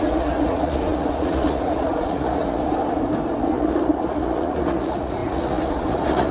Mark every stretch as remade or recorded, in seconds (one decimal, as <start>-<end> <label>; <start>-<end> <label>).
0.0-2.8 remade; 2.8-3.4 recorded; 3.4-6.3 remade